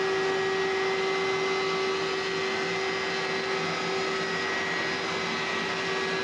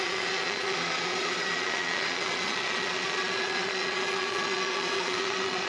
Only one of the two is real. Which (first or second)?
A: first